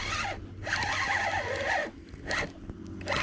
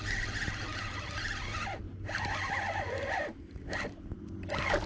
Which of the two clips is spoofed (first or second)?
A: second